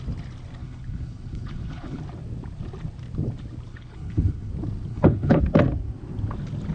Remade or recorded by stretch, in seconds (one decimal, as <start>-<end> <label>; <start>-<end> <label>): 0.0-0.6 recorded; 0.6-2.0 remade; 2.0-3.7 recorded; 3.7-4.5 remade; 4.5-4.9 recorded; 4.9-5.4 remade; 5.4-6.7 recorded